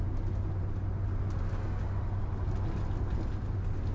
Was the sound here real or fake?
real